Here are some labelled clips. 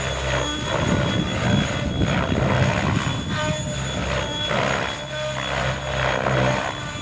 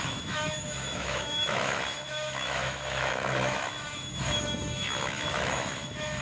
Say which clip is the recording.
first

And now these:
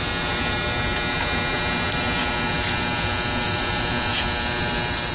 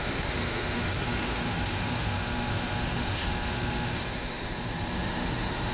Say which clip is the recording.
first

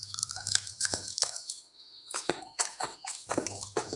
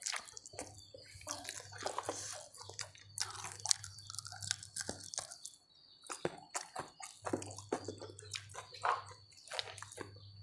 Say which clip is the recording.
second